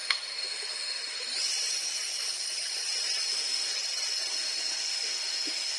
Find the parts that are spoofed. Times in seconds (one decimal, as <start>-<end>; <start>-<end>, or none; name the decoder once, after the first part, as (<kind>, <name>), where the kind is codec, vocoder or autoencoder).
0.0-1.3 (autoencoder, DAC-VAE); 3.3-3.7; 4.3-5.8